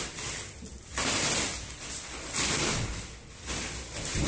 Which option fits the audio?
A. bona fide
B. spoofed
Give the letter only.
A